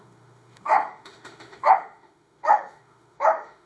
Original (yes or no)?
no